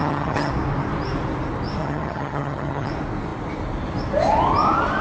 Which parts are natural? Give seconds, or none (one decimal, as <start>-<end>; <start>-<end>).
0.5-1.8; 2.9-5.0